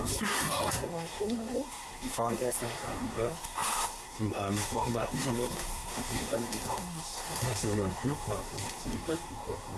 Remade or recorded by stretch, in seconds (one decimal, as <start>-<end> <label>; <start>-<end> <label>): 0.0-9.8 remade